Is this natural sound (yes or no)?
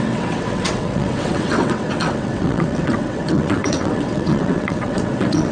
no